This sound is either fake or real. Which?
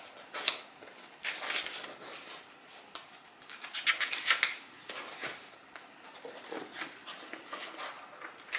real